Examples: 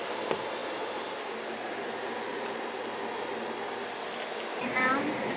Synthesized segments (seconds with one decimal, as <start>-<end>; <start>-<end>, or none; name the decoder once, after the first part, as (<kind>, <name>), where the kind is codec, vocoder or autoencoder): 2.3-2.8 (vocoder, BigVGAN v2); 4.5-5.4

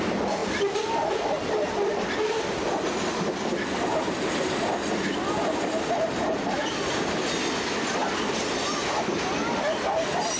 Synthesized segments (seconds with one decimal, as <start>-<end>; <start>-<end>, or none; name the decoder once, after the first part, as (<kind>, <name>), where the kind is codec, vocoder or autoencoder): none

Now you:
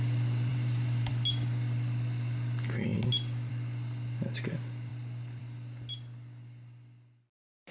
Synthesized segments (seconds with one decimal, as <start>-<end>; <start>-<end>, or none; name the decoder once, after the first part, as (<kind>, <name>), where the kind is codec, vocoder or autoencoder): 0.5-1.1 (vocoder, BigVGAN v2)

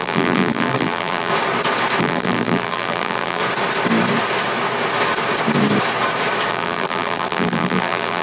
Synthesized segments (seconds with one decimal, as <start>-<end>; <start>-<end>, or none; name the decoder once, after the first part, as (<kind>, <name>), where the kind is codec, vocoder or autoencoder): 0.0-1.3 (vocoder, BigVGAN v2); 2.0-3.4; 6.5-8.2